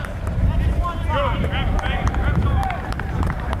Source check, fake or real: fake